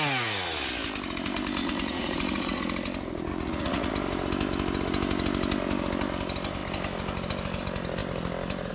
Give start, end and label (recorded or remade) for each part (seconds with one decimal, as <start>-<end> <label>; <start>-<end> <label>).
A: 0.0-1.6 recorded; 1.6-2.6 remade; 2.6-3.3 recorded; 3.3-3.9 remade; 3.9-8.7 recorded